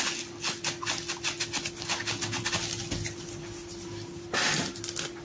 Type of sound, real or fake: real